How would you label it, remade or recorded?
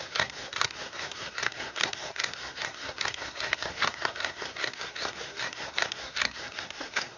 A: remade